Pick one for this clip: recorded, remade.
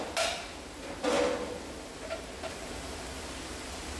recorded